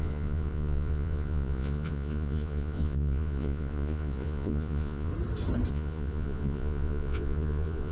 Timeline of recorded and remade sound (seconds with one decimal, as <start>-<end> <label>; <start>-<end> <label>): 0.0-5.1 remade; 5.1-5.7 recorded; 5.7-7.9 remade